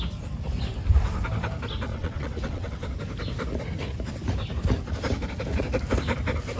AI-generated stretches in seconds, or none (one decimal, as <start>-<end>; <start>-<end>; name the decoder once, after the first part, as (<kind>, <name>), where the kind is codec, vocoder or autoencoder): 1.9-2.9 (vocoder, WaveNeXt)